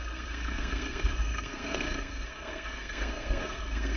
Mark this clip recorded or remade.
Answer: remade